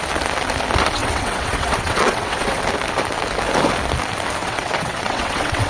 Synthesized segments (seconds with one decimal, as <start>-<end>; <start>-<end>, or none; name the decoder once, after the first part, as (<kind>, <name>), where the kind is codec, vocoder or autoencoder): 1.0-2.6 (vocoder, WaveNeXt); 4.4-5.7